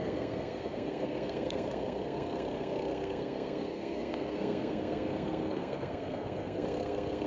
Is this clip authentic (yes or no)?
no